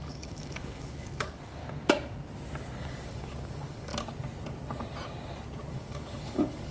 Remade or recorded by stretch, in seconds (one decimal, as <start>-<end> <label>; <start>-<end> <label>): 0.0-1.6 remade; 1.6-2.8 recorded; 2.8-3.9 remade; 3.9-5.7 recorded; 5.7-6.7 remade